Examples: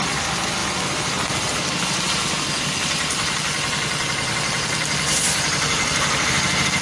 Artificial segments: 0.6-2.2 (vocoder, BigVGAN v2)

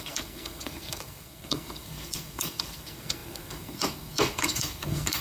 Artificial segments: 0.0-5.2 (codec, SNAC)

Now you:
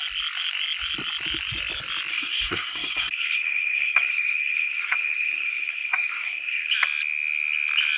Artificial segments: 2.1-6.7 (codec, SNAC)

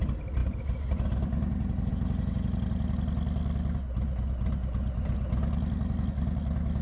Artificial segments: none

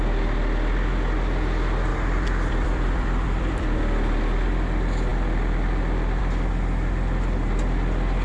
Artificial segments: 1.9-4.2 (vocoder, BigVGAN v2)